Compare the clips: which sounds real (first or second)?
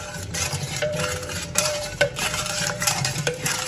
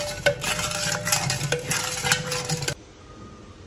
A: second